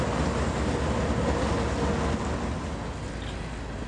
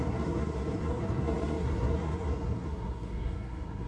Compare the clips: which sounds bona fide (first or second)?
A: first